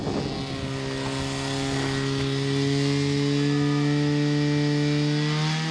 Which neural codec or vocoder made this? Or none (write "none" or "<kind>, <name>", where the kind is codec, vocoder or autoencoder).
none